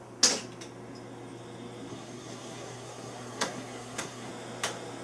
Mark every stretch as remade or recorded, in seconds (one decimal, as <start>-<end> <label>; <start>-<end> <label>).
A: 0.0-1.9 recorded; 1.9-4.3 remade; 4.3-5.0 recorded